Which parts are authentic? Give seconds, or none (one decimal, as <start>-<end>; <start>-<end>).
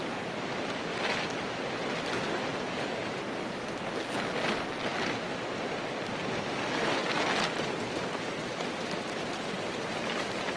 0.0-2.5; 3.0-10.6